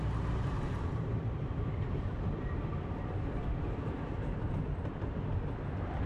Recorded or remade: recorded